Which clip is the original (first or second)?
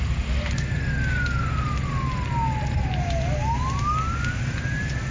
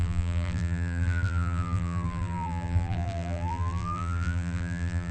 first